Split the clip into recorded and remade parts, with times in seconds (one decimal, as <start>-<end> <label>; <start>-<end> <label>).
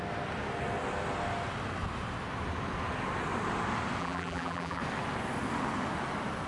0.0-4.0 recorded; 4.0-4.8 remade; 4.8-6.5 recorded